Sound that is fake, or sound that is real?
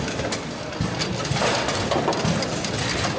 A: real